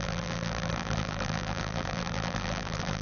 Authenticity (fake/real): fake